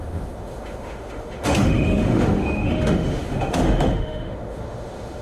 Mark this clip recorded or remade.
remade